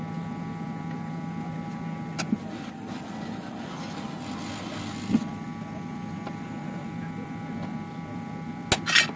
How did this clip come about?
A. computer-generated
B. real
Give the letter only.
B